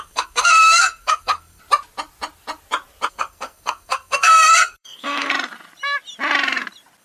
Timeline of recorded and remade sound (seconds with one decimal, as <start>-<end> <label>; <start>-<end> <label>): 0.0-1.6 remade; 1.6-3.1 recorded; 3.1-5.3 remade; 5.3-7.0 recorded

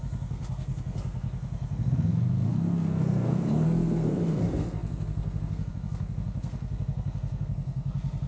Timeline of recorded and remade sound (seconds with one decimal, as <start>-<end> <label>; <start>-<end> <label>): 0.0-8.3 remade